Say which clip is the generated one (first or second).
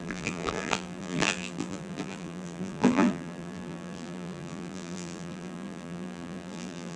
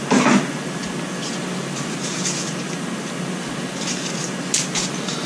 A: first